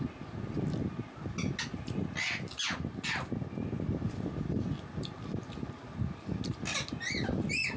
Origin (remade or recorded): recorded